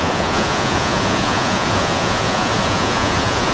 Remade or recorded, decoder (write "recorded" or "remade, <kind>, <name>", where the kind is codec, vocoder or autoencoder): remade, vocoder, Vocos